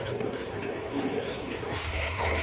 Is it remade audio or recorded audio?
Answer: remade